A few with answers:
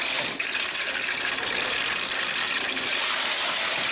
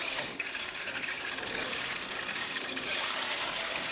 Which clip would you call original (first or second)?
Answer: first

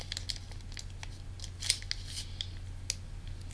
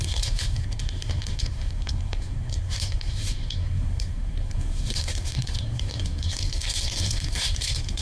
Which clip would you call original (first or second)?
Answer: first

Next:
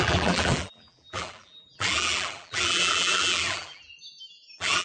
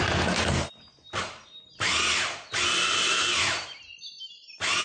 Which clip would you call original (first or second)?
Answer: second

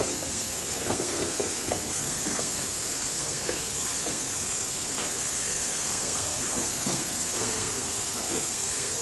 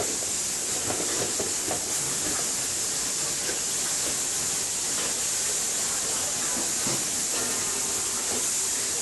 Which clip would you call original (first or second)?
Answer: second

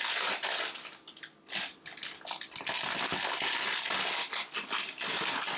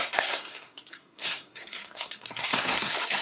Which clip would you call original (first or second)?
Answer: first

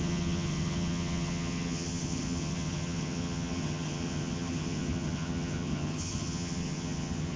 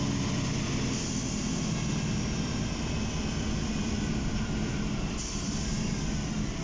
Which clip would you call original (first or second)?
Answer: second